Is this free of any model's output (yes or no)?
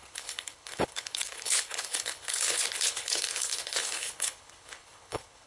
no